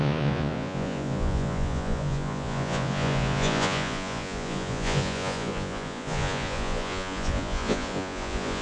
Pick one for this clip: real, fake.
fake